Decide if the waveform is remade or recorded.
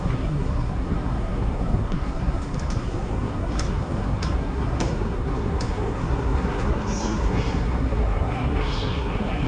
remade